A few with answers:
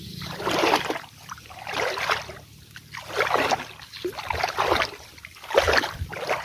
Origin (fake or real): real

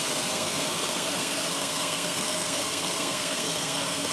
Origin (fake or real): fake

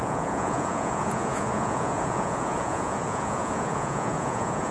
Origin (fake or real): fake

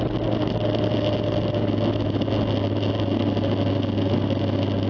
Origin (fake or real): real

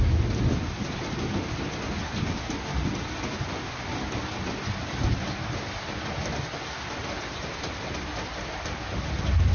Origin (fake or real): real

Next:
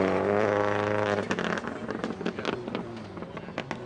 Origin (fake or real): real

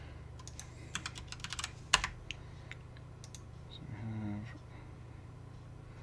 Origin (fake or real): real